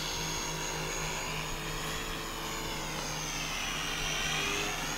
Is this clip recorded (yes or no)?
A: yes